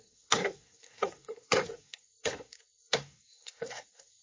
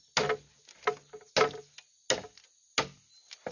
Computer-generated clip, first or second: first